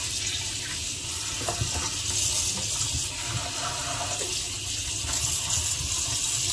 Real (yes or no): yes